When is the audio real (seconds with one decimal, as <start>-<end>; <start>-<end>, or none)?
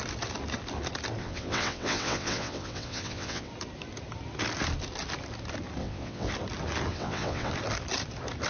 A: 0.0-1.2; 3.5-5.8; 6.3-6.9; 7.5-8.5